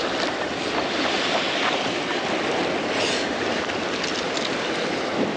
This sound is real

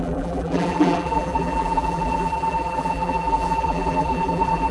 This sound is fake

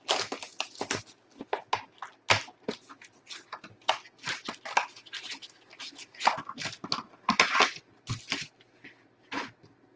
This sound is real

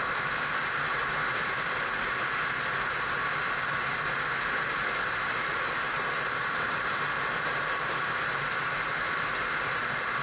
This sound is real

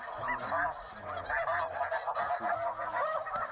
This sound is real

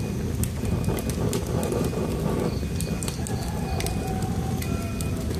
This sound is real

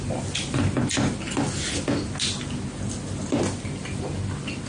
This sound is real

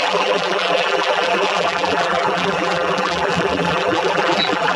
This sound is fake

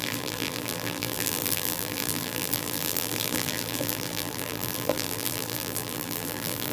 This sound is fake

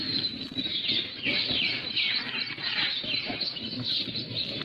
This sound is real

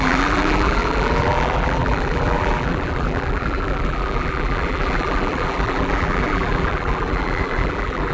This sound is fake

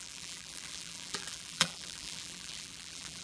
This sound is fake